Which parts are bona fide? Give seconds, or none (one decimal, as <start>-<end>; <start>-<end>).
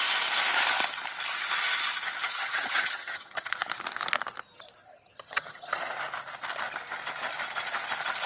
0.0-2.2; 3.5-4.8; 6.0-8.3